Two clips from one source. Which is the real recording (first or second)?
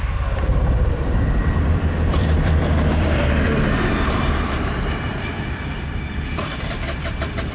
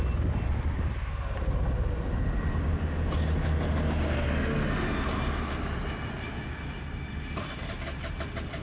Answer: second